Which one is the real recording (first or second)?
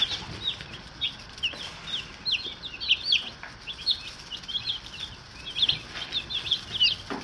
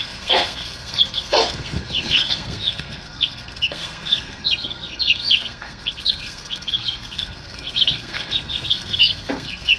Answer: first